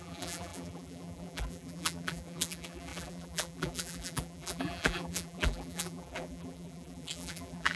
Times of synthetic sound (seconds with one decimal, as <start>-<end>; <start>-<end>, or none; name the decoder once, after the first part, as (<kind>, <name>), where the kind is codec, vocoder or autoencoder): 0.0-7.8 (vocoder, BigVGAN v2)